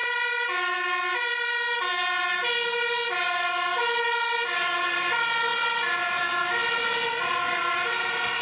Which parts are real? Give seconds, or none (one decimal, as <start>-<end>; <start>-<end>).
0.0-8.4